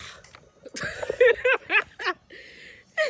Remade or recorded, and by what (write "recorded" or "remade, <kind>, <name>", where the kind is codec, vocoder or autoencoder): recorded